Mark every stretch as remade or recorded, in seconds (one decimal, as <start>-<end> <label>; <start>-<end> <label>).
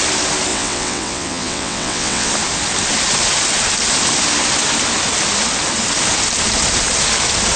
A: 0.0-0.5 recorded; 0.5-2.3 remade; 2.3-7.6 recorded